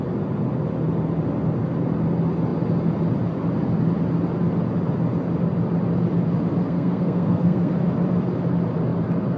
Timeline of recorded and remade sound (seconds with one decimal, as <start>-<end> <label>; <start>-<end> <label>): 0.0-6.6 recorded; 6.6-7.7 remade; 7.7-9.4 recorded